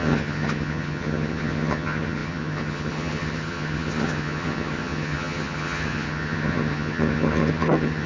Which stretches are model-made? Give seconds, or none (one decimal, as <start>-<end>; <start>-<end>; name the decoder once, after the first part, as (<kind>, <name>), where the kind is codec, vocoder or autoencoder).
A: 0.0-8.1 (vocoder, HiFi-GAN)